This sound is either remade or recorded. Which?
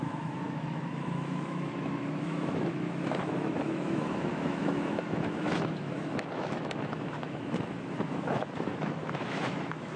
remade